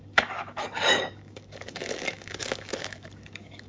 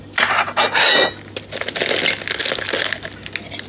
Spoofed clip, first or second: first